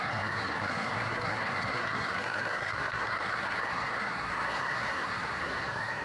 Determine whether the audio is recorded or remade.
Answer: remade